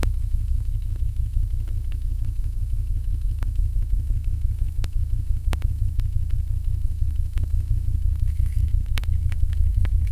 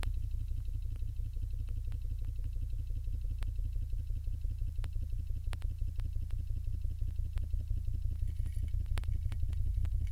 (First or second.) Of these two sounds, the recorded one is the second